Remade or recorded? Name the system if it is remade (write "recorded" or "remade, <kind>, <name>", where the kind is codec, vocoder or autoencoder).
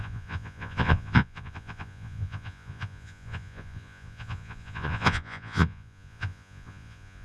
remade, vocoder, Vocos